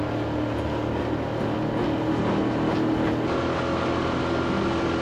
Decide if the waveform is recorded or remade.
recorded